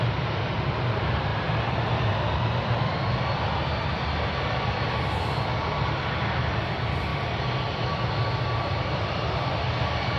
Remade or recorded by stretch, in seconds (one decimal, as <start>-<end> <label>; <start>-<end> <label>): 0.0-10.2 recorded